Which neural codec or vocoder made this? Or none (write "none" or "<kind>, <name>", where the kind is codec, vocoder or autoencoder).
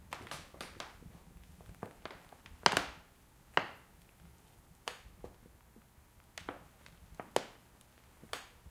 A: none